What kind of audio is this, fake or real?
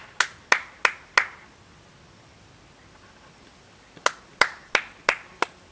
real